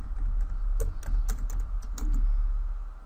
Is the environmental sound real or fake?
real